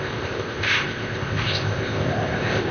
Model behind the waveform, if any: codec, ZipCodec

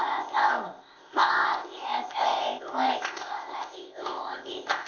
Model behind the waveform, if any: codec, ZipCodec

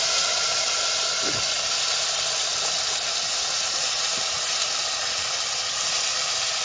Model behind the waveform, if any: none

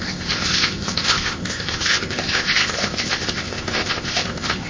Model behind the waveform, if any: codec, ZipCodec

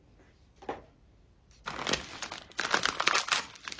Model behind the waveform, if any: none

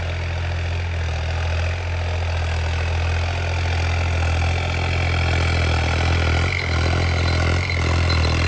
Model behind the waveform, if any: none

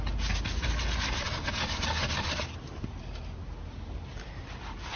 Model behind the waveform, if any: none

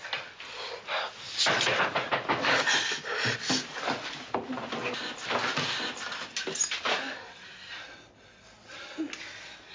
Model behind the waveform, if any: none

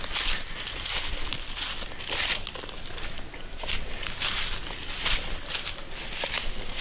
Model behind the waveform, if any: none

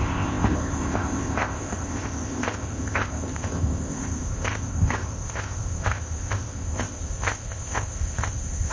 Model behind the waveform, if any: codec, ZipCodec